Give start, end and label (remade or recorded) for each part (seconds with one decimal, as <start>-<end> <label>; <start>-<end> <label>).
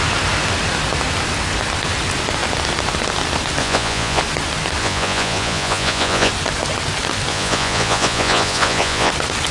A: 0.0-3.6 recorded; 3.6-4.2 remade; 4.2-4.8 recorded; 4.8-6.3 remade; 6.3-7.3 recorded; 7.3-9.1 remade; 9.1-9.5 recorded